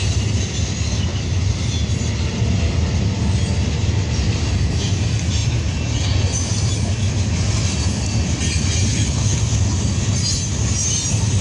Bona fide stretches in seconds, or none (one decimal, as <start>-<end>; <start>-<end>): 0.0-8.9; 9.4-11.4